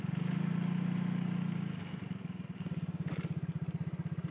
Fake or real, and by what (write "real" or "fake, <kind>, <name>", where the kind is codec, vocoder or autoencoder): real